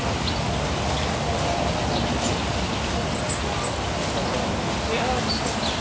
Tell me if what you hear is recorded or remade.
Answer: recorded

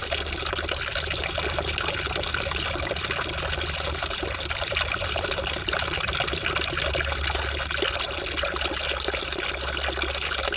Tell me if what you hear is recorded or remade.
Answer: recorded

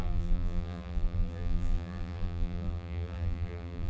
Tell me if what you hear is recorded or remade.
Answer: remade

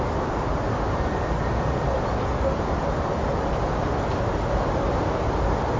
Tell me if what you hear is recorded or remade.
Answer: recorded